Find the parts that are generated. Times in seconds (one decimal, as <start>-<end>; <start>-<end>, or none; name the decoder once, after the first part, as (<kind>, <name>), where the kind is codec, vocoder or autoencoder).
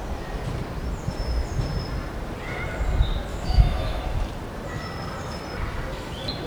3.3-4.0 (autoencoder, DAC-VAE)